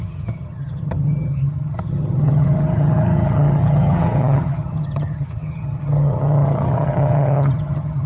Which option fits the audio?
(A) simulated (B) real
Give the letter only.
A